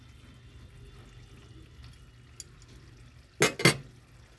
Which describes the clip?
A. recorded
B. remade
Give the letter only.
A